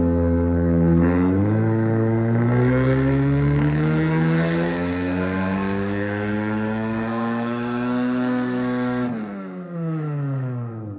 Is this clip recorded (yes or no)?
no